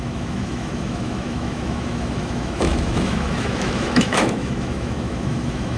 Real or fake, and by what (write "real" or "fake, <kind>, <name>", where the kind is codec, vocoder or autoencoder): fake, autoencoder, DAC-VAE